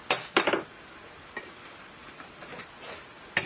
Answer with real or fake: real